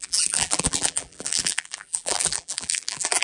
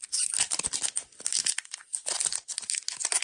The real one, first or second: second